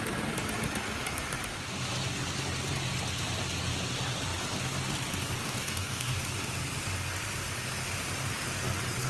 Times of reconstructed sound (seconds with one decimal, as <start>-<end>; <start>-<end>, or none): 5.4-6.2